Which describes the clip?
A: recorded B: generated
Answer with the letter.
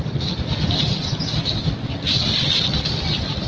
A